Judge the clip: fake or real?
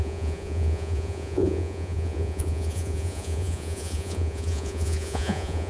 fake